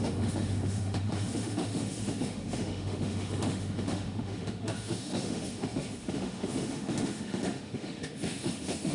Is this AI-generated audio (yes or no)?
yes